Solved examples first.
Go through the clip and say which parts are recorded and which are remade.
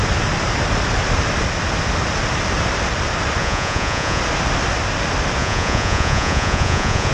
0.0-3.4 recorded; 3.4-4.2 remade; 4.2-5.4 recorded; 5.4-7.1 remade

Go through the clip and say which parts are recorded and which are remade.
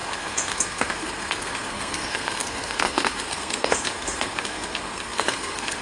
0.0-5.8 remade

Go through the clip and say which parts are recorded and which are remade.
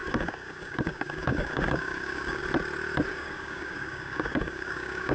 0.0-2.4 remade; 2.4-3.1 recorded; 3.1-5.1 remade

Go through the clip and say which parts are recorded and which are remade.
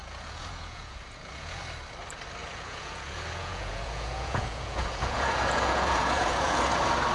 0.0-1.6 remade; 1.6-2.4 recorded; 2.4-6.6 remade; 6.6-7.1 recorded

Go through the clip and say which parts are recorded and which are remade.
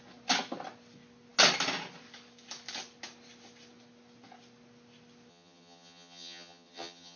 0.0-5.3 recorded; 5.3-7.2 remade